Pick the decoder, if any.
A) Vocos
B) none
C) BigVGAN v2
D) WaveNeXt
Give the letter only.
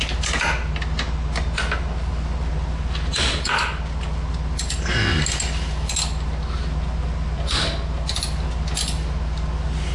B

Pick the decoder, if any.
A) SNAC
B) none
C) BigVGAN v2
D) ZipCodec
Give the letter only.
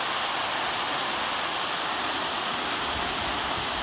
B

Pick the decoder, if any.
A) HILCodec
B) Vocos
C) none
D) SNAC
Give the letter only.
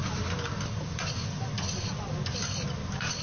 C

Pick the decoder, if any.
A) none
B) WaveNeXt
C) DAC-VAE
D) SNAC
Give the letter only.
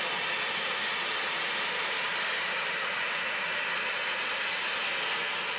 A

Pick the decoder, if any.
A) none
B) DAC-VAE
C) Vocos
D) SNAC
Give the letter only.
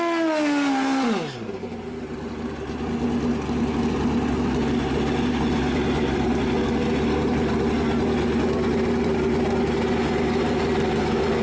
A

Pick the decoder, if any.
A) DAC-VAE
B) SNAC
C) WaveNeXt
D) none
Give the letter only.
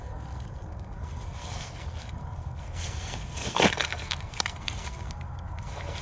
B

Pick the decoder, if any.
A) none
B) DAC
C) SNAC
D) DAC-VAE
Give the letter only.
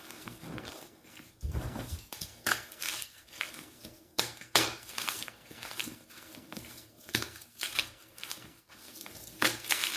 C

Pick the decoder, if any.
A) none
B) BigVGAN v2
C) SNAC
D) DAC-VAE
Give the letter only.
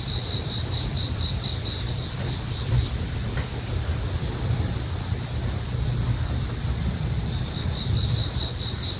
B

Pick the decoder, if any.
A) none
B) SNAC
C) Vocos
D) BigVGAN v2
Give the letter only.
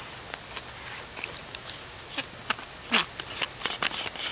A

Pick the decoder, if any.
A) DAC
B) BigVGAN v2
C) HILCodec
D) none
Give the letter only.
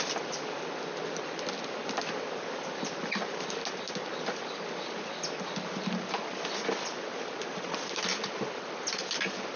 D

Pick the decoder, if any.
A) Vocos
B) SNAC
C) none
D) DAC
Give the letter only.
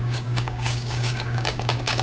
D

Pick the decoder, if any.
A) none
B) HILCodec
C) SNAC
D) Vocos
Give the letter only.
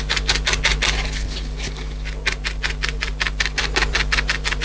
A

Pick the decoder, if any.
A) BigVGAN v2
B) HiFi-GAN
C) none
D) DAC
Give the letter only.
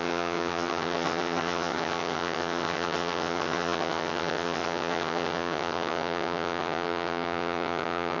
B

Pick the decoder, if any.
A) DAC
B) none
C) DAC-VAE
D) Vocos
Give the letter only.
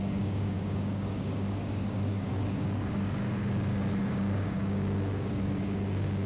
A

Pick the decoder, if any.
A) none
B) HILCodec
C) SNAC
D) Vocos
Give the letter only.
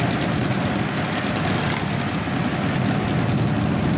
A